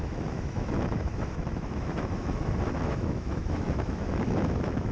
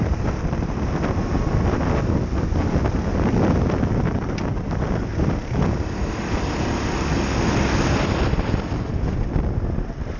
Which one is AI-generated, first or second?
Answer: first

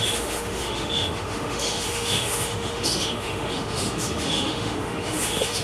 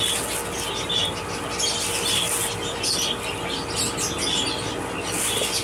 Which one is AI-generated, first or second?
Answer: first